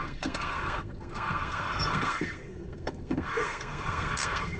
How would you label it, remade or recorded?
remade